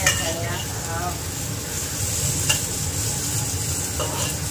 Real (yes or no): yes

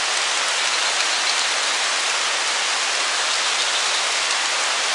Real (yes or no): yes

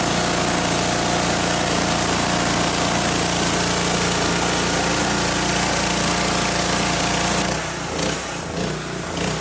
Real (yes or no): yes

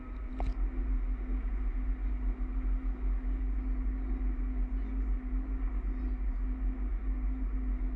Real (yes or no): yes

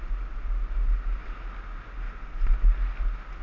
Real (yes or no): yes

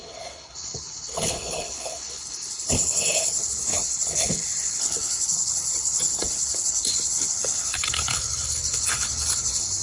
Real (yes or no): no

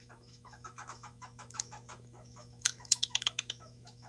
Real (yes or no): no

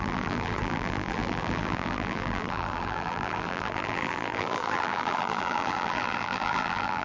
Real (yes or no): no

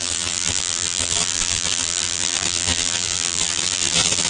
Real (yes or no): no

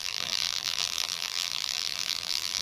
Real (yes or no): no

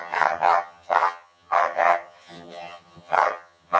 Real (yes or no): no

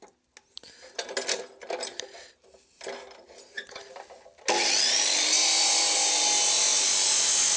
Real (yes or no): yes